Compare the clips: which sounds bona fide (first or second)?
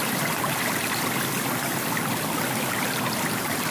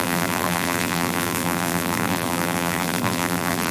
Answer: first